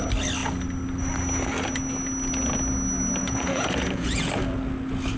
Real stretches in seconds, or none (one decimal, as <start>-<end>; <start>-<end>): 0.0-3.2; 4.3-5.2